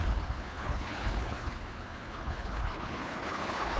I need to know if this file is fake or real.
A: fake